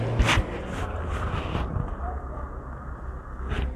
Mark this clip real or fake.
real